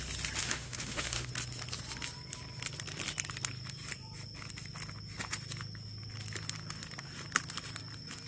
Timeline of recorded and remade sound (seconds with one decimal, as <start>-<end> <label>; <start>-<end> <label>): 0.0-0.4 recorded; 0.4-1.3 remade; 1.3-8.3 recorded

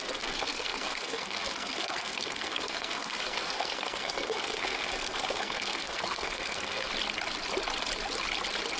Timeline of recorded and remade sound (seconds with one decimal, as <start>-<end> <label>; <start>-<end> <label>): 0.0-6.9 remade; 6.9-8.8 recorded

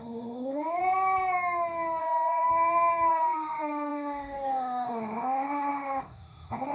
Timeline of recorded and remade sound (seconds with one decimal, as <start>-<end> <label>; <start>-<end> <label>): 0.0-0.8 remade; 0.8-2.0 recorded; 2.0-2.5 remade; 2.5-3.1 recorded; 3.1-6.7 remade